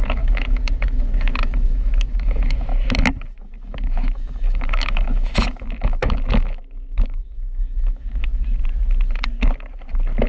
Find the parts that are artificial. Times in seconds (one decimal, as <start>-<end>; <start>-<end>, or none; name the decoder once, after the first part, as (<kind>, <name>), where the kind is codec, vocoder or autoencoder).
0.0-2.7 (autoencoder, DAC-VAE); 3.4-8.3